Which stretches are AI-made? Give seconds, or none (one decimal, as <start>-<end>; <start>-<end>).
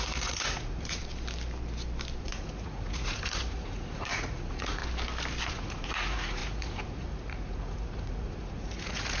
0.0-1.0; 2.2-4.8; 5.5-9.2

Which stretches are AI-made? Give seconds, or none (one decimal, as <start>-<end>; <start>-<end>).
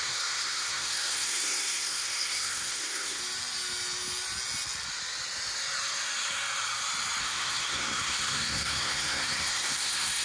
0.0-3.2; 7.2-10.2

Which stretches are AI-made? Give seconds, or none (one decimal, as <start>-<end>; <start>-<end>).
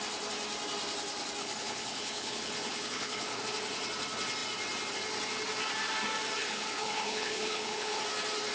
1.4-3.4; 6.4-8.0